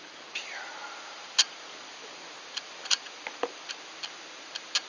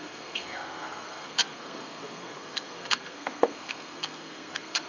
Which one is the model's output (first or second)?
second